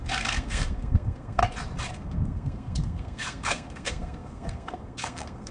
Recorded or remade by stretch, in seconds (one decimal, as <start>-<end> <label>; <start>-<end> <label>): 0.0-1.4 remade; 1.4-1.9 recorded; 1.9-5.5 remade